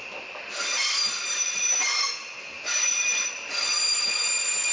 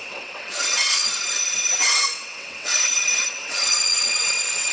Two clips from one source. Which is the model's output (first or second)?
second